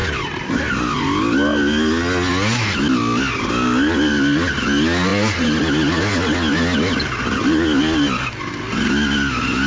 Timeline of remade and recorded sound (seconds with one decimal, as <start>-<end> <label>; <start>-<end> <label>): 0.0-0.9 remade; 0.9-5.1 recorded; 5.1-5.6 remade; 5.6-9.7 recorded